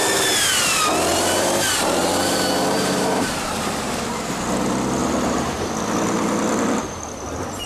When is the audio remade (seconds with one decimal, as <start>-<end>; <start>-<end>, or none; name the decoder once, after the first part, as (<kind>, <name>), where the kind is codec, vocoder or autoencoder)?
1.1-4.1 (vocoder, BigVGAN v2); 5.0-5.7